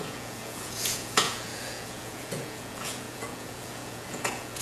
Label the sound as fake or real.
fake